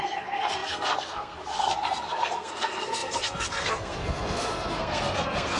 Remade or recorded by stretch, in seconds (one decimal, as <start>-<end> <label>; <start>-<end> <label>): 0.0-5.6 remade